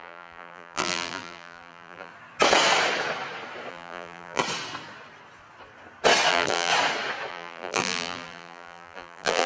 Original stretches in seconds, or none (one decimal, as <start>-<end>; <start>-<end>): 2.1-3.7; 4.4-6.3; 6.7-7.3